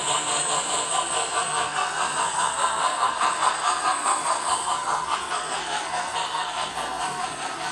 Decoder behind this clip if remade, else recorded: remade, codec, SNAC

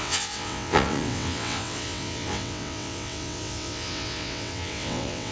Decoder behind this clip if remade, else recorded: remade, vocoder, WaveNeXt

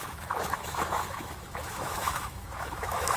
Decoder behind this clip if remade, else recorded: remade, autoencoder, DAC-VAE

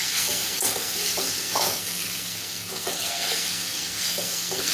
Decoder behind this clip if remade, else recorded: remade, codec, SNAC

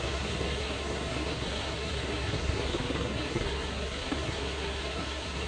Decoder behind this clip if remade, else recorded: remade, codec, SNAC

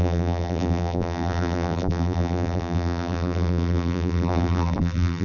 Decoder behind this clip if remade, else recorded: remade, vocoder, BigVGAN v2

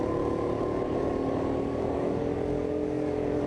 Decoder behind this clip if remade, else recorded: remade, codec, DAC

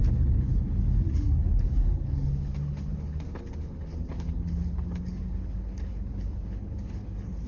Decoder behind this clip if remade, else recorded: remade, codec, HILCodec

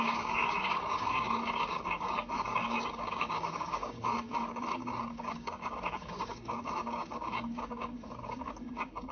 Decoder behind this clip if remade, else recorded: remade, codec, DAC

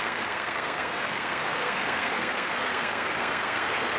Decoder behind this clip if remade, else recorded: remade, codec, SNAC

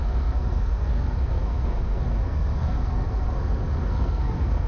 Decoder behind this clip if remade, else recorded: remade, codec, SNAC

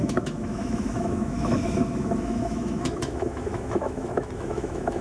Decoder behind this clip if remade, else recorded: remade, autoencoder, DAC-VAE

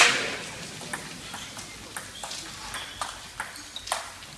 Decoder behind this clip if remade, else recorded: recorded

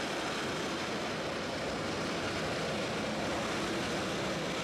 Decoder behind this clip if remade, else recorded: recorded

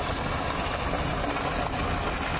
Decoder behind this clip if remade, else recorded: recorded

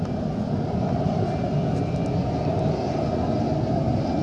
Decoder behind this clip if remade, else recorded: recorded